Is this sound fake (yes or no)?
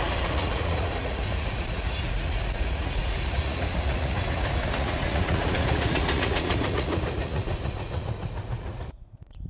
yes